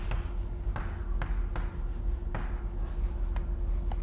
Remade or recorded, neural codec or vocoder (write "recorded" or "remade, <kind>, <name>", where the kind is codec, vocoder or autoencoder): recorded